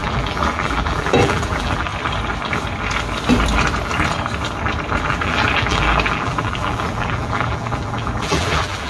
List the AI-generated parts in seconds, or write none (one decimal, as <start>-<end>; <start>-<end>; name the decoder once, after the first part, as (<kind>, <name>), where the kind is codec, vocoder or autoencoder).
0.0-1.9 (vocoder, BigVGAN v2); 5.0-8.9